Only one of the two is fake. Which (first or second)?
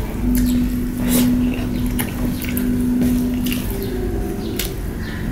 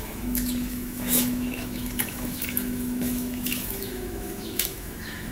second